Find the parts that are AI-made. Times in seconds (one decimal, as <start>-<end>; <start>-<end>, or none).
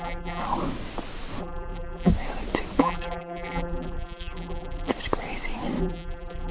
0.0-0.4; 1.4-2.1; 2.8-4.9; 5.8-6.5